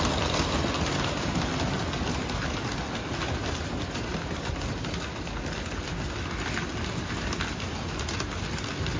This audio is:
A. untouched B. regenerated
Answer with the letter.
A